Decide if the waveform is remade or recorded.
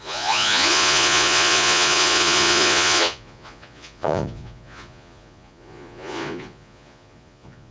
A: remade